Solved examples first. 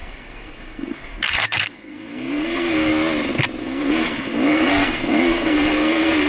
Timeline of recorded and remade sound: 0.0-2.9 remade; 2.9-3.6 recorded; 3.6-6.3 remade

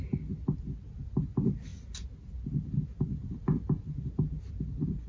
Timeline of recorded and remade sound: 0.0-5.1 recorded

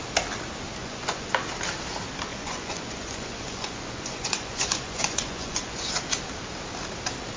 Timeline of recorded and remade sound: 0.0-0.8 recorded; 0.8-1.3 remade; 1.3-2.3 recorded; 2.3-5.9 remade; 5.9-7.4 recorded

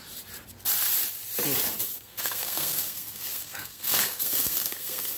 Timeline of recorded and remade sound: 0.0-1.9 recorded; 1.9-5.2 remade

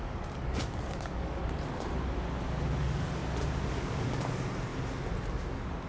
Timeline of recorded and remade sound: 0.0-1.4 remade; 1.4-2.8 recorded; 2.8-3.2 remade; 3.2-3.7 recorded; 3.7-4.7 remade; 4.7-5.3 recorded; 5.3-5.9 remade

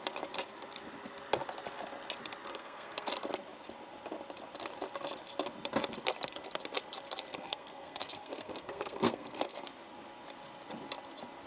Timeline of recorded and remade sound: 0.0-2.5 recorded; 2.5-3.1 remade; 3.1-7.3 recorded; 7.3-9.7 remade; 9.7-11.5 recorded

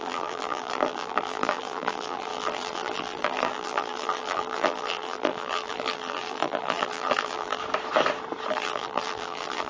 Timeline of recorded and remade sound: 0.0-7.6 remade; 7.6-8.5 recorded; 8.5-9.7 remade

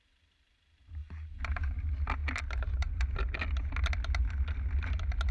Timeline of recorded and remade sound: 0.0-5.3 recorded